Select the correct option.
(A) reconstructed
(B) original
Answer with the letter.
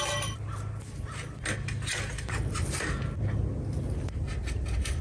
B